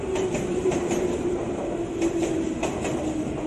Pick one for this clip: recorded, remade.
remade